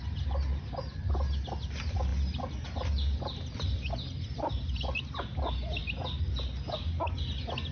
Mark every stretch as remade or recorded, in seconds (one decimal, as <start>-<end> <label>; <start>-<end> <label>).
0.0-7.7 recorded